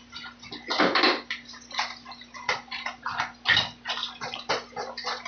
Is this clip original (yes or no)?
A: yes